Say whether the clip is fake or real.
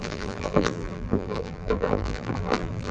fake